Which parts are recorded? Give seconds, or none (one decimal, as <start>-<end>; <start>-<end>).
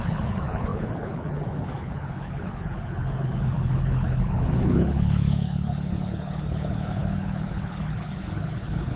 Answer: none